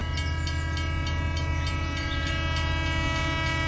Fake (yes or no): no